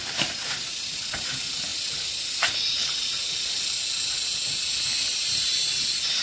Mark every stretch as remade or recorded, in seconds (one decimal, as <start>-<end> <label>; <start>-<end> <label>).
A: 0.0-6.2 recorded